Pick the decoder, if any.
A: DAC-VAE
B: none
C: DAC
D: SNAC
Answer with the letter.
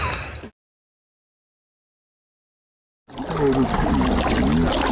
B